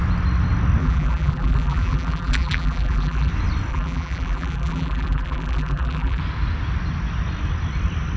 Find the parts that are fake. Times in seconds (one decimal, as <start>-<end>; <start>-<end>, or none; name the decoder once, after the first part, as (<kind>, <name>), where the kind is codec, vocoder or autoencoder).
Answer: 0.8-3.3 (vocoder, BigVGAN v2); 3.7-6.2

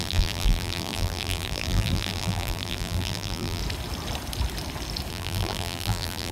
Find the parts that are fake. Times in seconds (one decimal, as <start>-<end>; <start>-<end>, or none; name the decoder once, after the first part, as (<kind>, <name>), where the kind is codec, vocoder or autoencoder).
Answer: 0.0-3.6 (vocoder, BigVGAN v2); 5.1-6.3

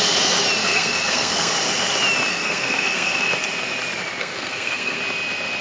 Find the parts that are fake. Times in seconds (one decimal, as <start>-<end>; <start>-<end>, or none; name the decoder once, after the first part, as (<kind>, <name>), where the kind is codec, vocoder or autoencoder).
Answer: 0.6-1.5 (codec, SNAC); 2.3-3.3; 4.2-5.0